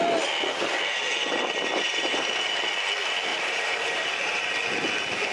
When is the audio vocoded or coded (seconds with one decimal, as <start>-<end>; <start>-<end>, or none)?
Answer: 1.7-2.4; 3.3-4.5